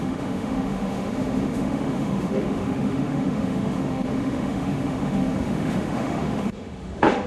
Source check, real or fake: fake